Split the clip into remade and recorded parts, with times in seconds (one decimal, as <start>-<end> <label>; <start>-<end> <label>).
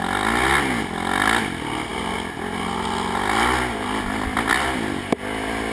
0.0-5.7 recorded